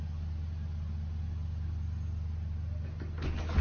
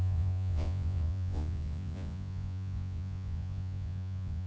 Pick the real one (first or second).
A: first